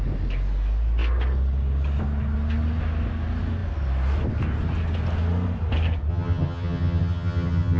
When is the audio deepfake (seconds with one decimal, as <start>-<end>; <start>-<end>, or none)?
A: 6.1-7.8